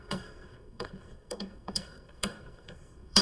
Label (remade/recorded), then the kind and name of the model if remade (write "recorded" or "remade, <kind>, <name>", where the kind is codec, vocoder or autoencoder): remade, codec, SNAC